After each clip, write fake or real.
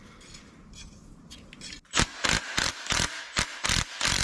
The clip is real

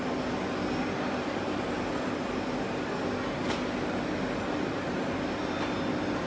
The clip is real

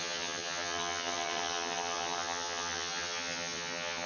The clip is fake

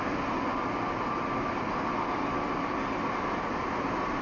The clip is real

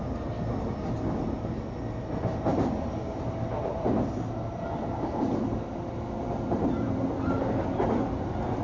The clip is real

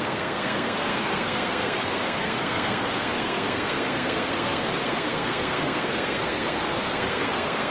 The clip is fake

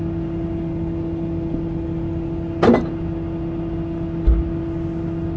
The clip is real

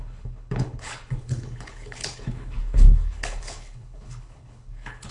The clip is fake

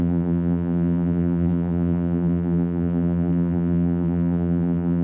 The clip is fake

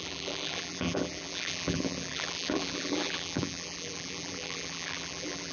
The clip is fake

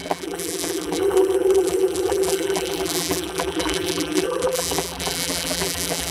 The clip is fake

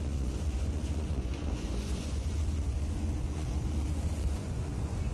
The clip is fake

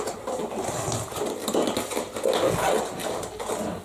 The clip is real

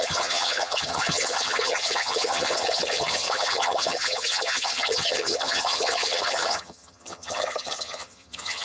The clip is fake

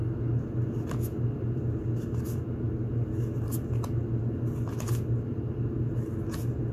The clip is real